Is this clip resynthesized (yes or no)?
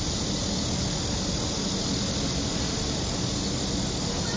no